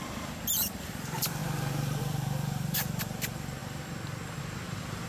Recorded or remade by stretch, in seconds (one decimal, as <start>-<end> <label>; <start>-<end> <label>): 0.0-5.1 remade